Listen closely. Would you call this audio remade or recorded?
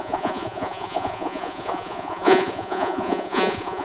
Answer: remade